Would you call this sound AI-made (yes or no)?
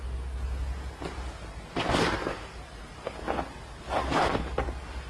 no